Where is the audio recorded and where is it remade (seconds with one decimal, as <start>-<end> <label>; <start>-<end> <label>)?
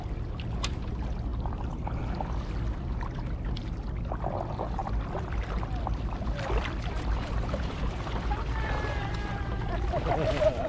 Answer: 0.0-1.3 recorded; 1.3-2.0 remade; 2.0-4.8 recorded; 4.8-9.1 remade; 9.1-10.7 recorded